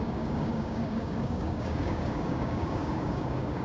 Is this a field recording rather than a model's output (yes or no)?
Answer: no